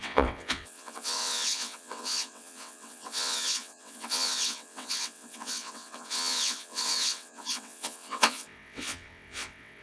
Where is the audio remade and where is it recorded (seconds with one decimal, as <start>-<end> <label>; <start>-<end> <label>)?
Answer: 0.0-9.8 remade